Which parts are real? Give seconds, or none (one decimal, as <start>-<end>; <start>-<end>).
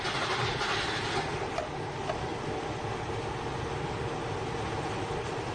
0.0-5.5